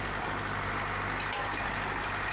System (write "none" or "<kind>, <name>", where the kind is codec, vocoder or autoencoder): none